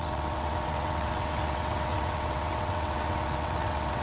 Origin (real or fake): fake